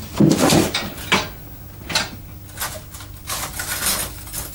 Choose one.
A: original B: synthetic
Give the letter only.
A